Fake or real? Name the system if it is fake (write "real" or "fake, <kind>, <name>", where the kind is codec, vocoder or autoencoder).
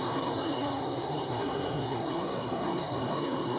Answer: fake, codec, SNAC